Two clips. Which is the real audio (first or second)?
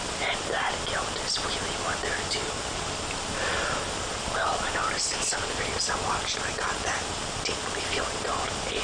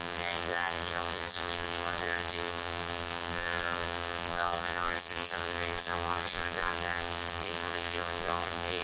first